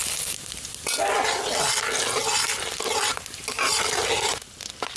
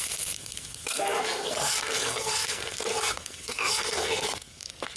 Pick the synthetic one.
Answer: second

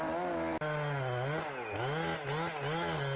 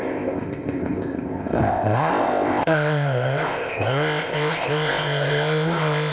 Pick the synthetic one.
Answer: second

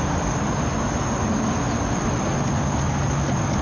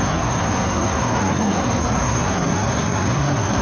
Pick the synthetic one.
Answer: second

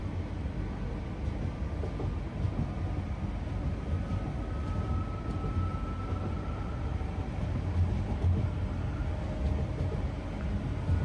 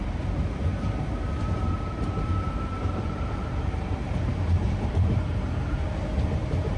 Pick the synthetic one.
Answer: second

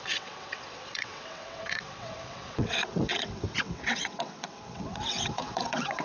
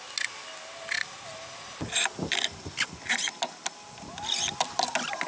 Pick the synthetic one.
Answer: first